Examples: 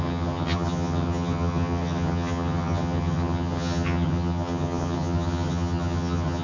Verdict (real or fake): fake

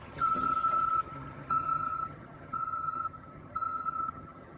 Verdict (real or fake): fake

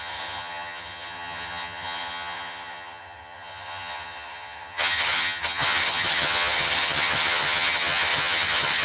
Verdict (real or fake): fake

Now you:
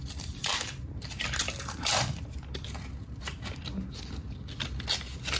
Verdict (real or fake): real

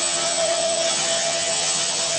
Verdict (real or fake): fake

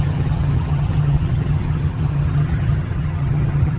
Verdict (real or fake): fake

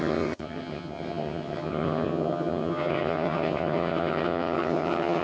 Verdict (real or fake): fake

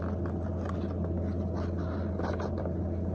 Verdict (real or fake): real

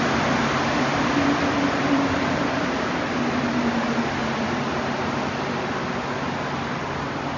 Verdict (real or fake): real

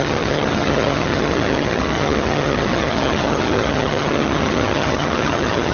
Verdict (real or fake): fake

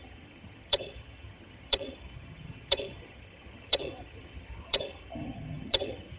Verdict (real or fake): fake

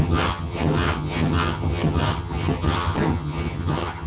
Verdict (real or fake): fake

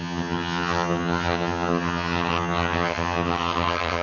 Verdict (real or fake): fake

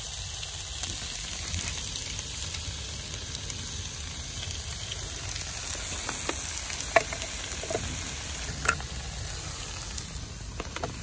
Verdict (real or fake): real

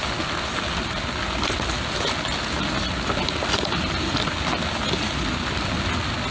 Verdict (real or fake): real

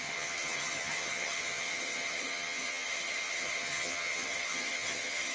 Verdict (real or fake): fake